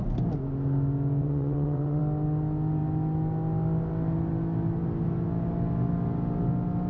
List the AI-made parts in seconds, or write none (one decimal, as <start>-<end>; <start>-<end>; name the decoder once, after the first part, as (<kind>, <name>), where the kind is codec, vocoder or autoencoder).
1.2-2.0 (vocoder, WaveNeXt)